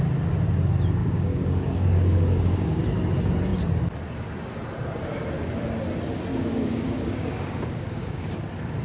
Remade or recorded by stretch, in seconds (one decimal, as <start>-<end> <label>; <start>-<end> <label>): 0.0-1.0 recorded; 1.0-2.8 remade; 2.8-6.3 recorded; 6.3-8.4 remade; 8.4-8.8 recorded